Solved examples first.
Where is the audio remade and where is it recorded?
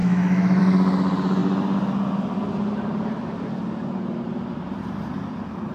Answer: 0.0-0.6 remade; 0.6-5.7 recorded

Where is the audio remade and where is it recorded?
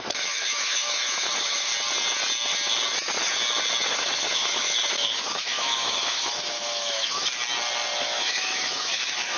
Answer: 0.0-1.7 remade; 1.7-3.9 recorded; 3.9-7.3 remade; 7.3-8.0 recorded; 8.0-9.4 remade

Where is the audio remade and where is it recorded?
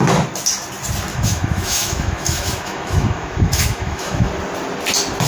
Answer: 0.0-1.1 recorded; 1.1-4.3 remade; 4.3-5.3 recorded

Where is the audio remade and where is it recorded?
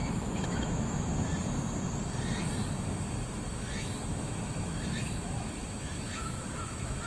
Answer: 0.0-1.1 remade; 1.1-3.5 recorded; 3.5-7.1 remade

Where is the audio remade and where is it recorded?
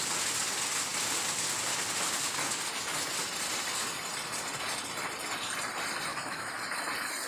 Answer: 0.0-6.1 recorded; 6.1-6.6 remade; 6.6-7.3 recorded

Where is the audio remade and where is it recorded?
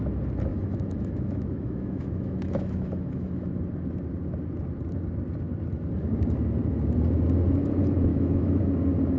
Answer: 0.0-0.5 recorded; 0.5-3.6 remade; 3.6-8.1 recorded; 8.1-8.6 remade; 8.6-9.2 recorded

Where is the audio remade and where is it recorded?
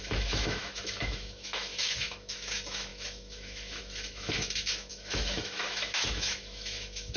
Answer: 0.0-7.2 remade